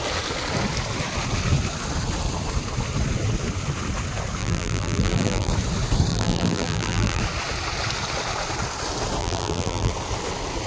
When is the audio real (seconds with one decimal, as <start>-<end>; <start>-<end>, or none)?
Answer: 0.0-4.4; 5.5-6.1; 7.2-9.2; 9.9-10.7

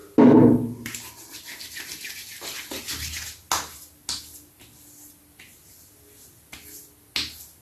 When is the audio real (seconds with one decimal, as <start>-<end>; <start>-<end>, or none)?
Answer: 0.0-7.6

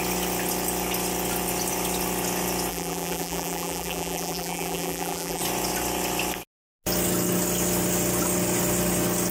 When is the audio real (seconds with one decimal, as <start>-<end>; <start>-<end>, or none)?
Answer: 0.0-2.7; 5.4-9.3